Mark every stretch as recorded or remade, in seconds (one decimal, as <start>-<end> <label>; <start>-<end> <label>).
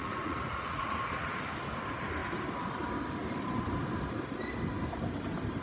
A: 0.0-1.4 remade; 1.4-5.6 recorded